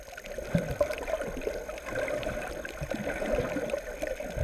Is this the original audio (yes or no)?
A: yes